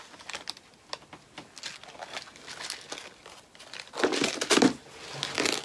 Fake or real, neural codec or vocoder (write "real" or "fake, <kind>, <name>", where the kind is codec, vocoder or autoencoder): real